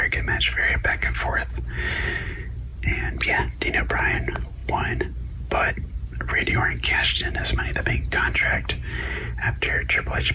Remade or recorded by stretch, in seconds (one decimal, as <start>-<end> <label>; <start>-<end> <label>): 0.0-1.0 remade; 1.0-1.9 recorded; 1.9-2.7 remade; 2.7-4.1 recorded; 4.1-4.6 remade; 4.6-5.7 recorded; 5.7-8.8 remade; 8.8-9.4 recorded; 9.4-10.3 remade